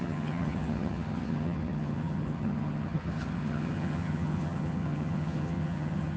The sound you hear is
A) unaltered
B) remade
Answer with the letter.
B